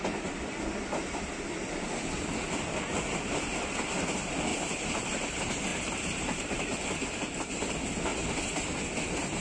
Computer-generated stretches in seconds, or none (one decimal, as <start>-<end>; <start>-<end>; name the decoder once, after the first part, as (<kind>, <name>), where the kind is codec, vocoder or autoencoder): 4.5-5.0 (vocoder, BigVGAN v2); 5.7-6.8